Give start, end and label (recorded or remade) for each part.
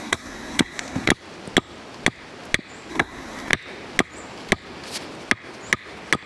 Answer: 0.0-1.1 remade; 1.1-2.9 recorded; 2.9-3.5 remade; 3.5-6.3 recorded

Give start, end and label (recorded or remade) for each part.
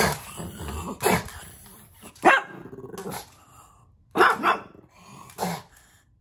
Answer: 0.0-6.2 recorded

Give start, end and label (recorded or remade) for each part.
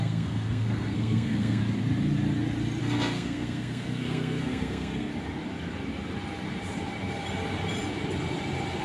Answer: 0.0-1.6 remade; 1.6-2.8 recorded; 2.8-5.1 remade; 5.1-8.8 recorded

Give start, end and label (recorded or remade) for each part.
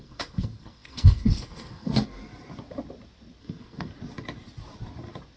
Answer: 0.0-2.3 remade; 2.3-3.4 recorded; 3.4-3.9 remade; 3.9-5.4 recorded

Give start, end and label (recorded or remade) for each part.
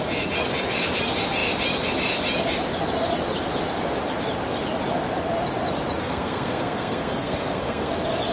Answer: 0.0-6.0 recorded; 6.0-7.9 remade; 7.9-8.3 recorded